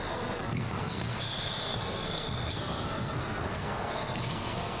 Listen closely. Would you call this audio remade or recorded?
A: remade